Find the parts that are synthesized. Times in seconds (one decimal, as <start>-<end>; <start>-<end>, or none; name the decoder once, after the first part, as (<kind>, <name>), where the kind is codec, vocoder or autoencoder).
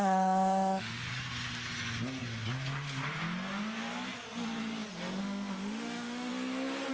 0.0-1.1 (autoencoder, DAC-VAE); 5.2-6.3